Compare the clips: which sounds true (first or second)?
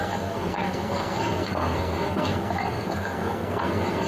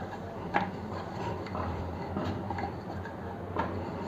second